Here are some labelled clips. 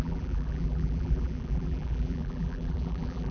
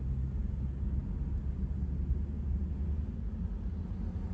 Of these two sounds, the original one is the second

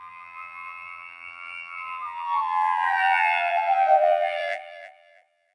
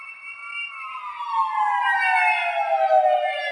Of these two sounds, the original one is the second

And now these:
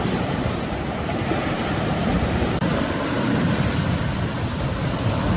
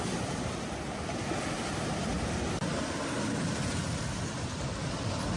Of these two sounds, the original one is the second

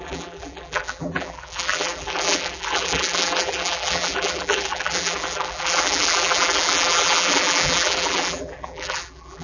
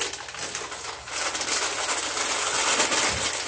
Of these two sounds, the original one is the second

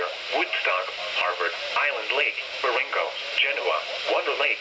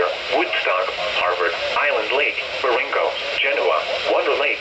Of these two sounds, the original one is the first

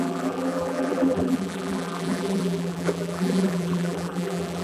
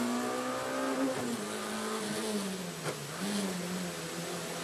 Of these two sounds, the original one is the second